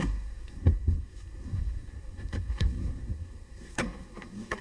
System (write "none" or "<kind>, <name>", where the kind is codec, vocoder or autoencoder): codec, SNAC